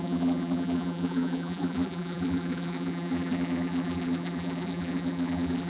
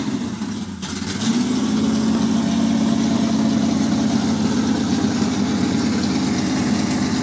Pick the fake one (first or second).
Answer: first